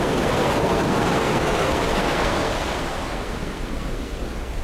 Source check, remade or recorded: remade